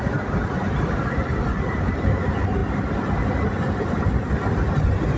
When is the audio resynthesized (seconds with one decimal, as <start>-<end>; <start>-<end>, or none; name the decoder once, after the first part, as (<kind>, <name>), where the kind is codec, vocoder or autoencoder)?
none